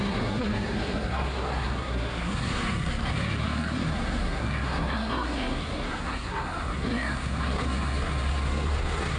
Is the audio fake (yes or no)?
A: yes